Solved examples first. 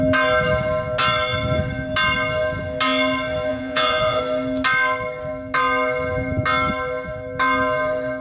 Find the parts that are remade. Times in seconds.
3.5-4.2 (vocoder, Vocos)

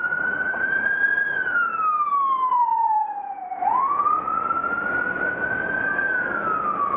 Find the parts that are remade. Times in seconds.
0.0-1.7 (vocoder, Vocos); 2.5-4.6

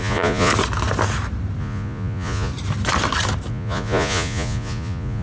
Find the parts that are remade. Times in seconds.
0.0-0.5 (vocoder, Vocos); 1.6-2.5; 3.5-5.2

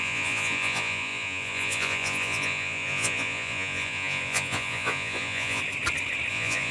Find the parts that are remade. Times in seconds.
0.0-5.6 (vocoder, Vocos); 6.3-6.7

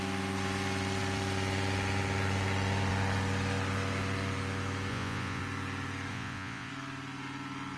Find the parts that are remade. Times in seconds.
4.9-5.4 (vocoder, Vocos); 6.1-6.7

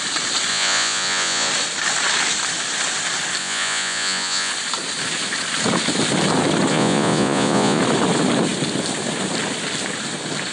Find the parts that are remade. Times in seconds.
0.5-1.5 (vocoder, Vocos); 3.4-4.5; 6.7-7.8